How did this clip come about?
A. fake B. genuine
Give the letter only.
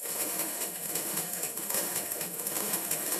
A